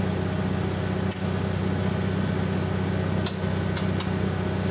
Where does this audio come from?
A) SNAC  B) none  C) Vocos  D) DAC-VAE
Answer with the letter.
B